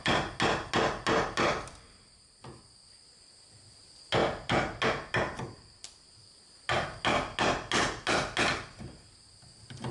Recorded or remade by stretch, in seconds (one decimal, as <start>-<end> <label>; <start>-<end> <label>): 0.0-9.9 recorded